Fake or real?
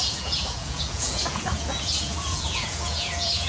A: fake